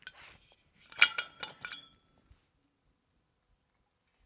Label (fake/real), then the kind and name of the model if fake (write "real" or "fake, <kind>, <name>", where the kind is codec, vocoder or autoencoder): real